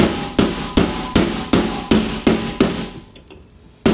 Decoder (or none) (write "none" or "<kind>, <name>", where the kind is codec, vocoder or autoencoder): none